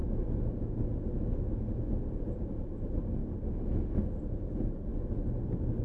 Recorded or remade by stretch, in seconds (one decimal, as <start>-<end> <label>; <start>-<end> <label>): 0.0-2.1 recorded; 2.1-3.2 remade; 3.2-4.2 recorded; 4.2-4.9 remade; 4.9-5.8 recorded